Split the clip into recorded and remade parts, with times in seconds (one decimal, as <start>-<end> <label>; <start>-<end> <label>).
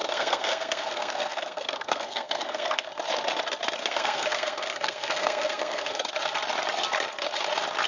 0.0-2.9 remade; 2.9-3.8 recorded; 3.8-6.1 remade; 6.1-7.9 recorded